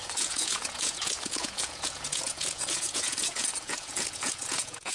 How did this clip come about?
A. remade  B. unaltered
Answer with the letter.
A